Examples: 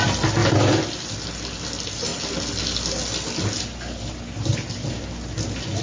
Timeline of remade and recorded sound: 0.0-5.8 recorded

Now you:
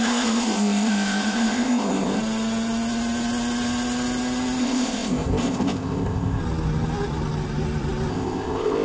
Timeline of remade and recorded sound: 0.0-2.2 remade; 2.2-4.6 recorded; 4.6-6.4 remade; 6.4-8.1 recorded; 8.1-8.8 remade

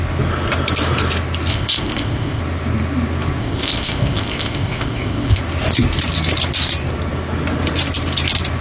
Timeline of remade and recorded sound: 0.0-1.5 recorded; 1.5-2.4 remade; 2.4-3.4 recorded; 3.4-5.4 remade; 5.4-8.6 recorded

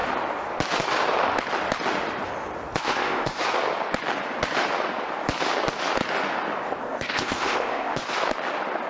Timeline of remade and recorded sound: 0.0-2.8 recorded; 2.8-3.4 remade; 3.4-6.8 recorded; 6.8-8.0 remade; 8.0-8.9 recorded

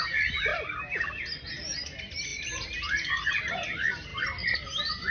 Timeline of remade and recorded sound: 0.0-5.1 recorded

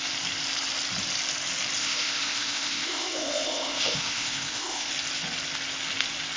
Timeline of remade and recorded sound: 0.0-1.8 recorded; 1.8-4.9 remade; 4.9-6.4 recorded

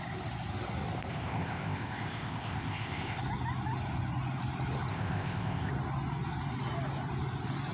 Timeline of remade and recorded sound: 0.0-1.1 recorded; 1.1-3.2 remade; 3.2-4.9 recorded; 4.9-5.7 remade; 5.7-7.7 recorded

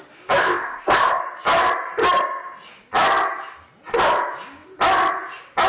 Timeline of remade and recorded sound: 0.0-0.4 recorded; 0.4-1.2 remade; 1.2-5.7 recorded